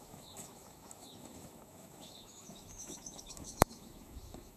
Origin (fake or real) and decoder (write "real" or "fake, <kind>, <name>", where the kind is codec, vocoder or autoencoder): fake, autoencoder, DAC-VAE